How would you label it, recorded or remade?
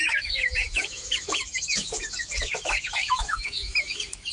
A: remade